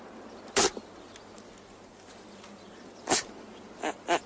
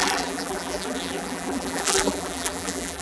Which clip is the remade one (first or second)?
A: second